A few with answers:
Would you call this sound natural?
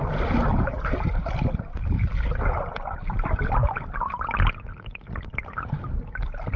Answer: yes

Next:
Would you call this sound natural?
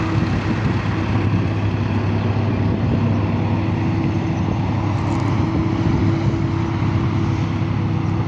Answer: yes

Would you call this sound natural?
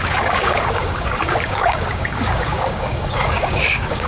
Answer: no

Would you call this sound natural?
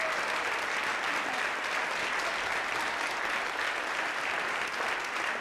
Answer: yes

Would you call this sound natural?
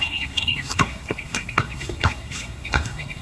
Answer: no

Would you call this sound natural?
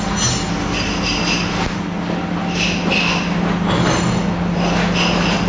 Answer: yes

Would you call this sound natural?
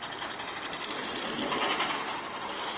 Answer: yes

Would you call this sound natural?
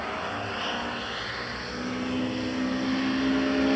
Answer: yes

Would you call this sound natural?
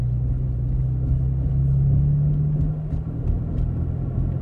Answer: yes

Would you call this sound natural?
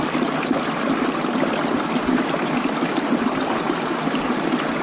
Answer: yes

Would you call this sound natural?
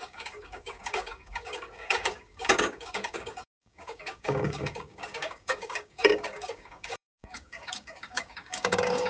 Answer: no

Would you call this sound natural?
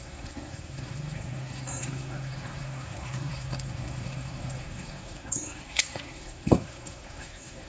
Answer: no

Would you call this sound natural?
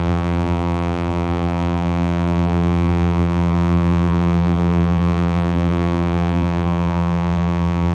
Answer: no